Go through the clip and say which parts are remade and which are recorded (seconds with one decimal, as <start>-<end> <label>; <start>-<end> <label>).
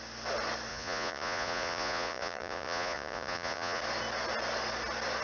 0.0-0.7 recorded; 0.7-3.8 remade; 3.8-5.2 recorded